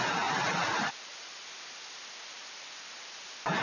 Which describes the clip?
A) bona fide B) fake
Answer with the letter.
A